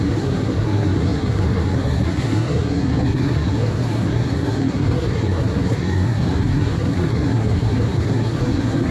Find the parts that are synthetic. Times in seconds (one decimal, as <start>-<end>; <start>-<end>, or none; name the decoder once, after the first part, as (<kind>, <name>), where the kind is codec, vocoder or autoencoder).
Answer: 0.0-8.9 (codec, SNAC)